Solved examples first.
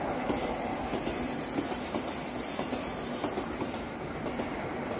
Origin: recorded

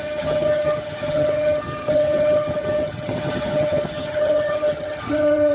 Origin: remade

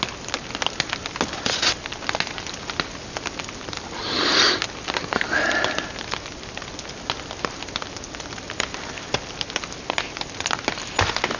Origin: recorded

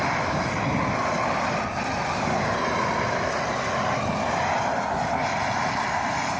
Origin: recorded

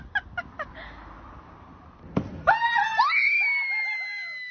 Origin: recorded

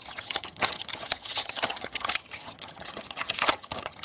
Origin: remade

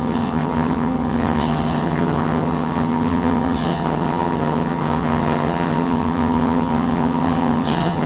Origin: remade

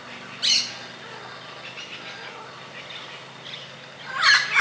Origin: recorded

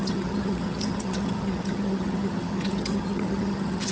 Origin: remade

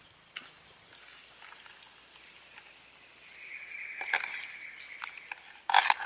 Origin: recorded